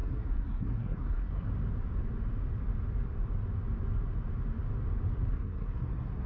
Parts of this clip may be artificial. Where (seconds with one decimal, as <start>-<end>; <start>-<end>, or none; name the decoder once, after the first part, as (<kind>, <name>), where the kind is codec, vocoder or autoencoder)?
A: 0.0-1.5 (codec, SNAC); 5.3-6.3